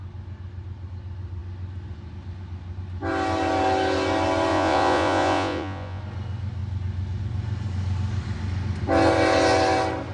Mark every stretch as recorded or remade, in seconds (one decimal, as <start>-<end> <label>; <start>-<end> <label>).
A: 0.0-4.5 recorded; 4.5-6.0 remade; 6.0-10.1 recorded